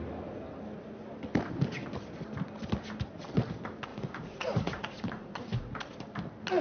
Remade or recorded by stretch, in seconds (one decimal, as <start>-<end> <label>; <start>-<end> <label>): 0.0-3.9 recorded; 3.9-5.8 remade; 5.8-6.6 recorded